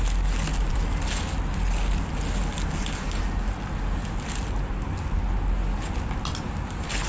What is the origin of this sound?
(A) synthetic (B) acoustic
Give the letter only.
B